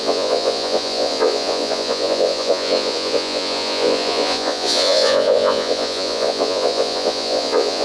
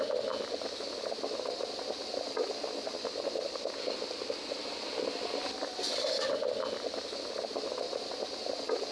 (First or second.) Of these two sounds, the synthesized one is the first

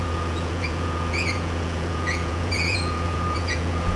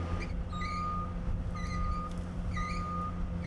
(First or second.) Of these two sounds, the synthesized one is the first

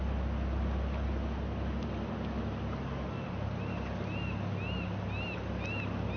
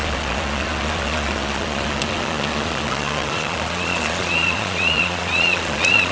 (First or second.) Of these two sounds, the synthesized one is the second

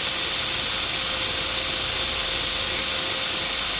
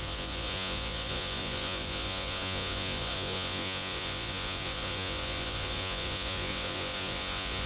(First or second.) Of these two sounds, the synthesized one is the second